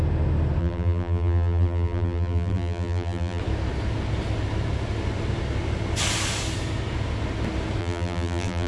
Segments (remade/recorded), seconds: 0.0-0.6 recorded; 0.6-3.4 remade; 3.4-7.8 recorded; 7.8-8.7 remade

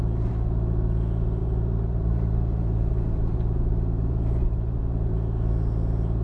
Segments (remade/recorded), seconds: 0.0-1.4 recorded; 1.4-5.1 remade; 5.1-6.2 recorded

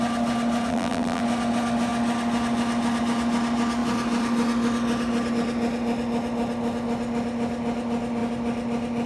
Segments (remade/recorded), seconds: 0.0-0.7 recorded; 0.7-1.2 remade; 1.2-9.1 recorded

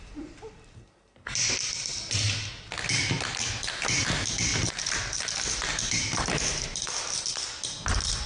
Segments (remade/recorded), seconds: 0.0-1.9 remade; 1.9-3.6 recorded; 3.6-8.3 remade

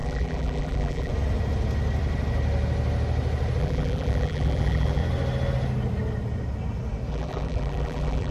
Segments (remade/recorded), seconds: 0.0-1.1 remade; 1.1-3.6 recorded; 3.6-5.0 remade; 5.0-7.1 recorded; 7.1-8.3 remade